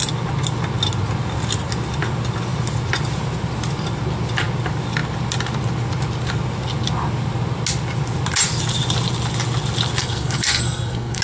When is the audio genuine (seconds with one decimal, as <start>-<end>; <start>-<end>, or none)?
0.0-10.0